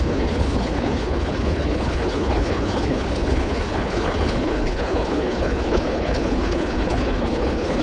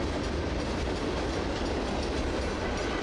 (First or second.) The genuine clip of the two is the second